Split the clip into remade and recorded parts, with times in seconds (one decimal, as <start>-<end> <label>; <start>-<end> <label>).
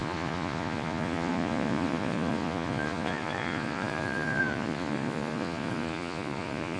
0.0-6.8 remade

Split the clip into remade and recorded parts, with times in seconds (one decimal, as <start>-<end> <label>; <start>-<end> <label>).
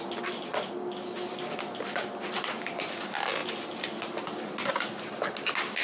0.0-5.8 recorded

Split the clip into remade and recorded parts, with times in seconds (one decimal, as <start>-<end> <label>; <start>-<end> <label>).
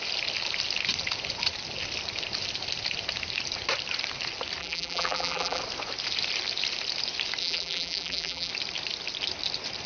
0.0-4.6 recorded; 4.6-5.6 remade; 5.6-7.4 recorded; 7.4-8.5 remade; 8.5-9.9 recorded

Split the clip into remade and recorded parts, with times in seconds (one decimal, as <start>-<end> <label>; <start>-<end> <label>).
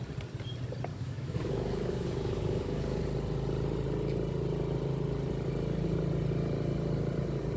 0.0-0.9 recorded; 0.9-3.0 remade; 3.0-7.6 recorded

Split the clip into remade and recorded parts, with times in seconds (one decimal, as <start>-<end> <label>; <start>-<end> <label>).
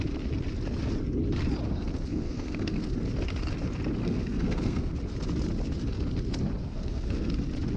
0.0-2.1 recorded; 2.1-2.8 remade; 2.8-4.0 recorded; 4.0-4.9 remade; 4.9-6.6 recorded; 6.6-7.3 remade; 7.3-7.8 recorded